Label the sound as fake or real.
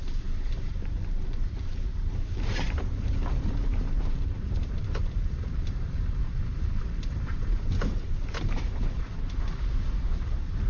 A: fake